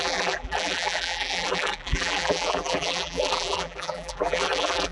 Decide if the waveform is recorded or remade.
remade